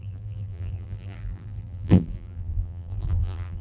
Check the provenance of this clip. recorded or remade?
remade